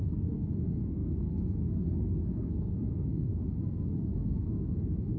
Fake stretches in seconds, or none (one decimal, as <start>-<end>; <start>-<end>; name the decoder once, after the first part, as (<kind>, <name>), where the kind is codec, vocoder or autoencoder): 0.0-5.2 (codec, SNAC)